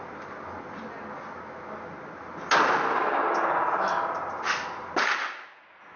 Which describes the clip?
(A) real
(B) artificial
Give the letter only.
A